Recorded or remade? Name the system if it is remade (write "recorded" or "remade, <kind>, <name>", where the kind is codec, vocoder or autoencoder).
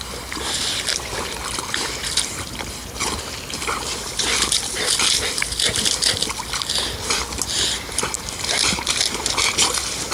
recorded